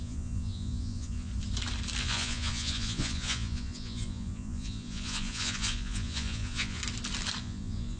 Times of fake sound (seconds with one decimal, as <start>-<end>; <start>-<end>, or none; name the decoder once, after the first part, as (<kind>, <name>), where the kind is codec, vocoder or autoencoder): 0.0-1.3 (vocoder, Vocos); 2.0-6.8; 7.4-8.0